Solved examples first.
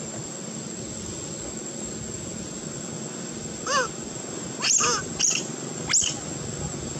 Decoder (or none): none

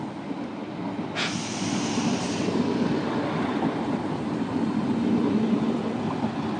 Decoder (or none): none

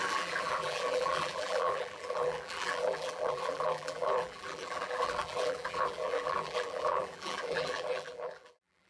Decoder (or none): vocoder, BigVGAN v2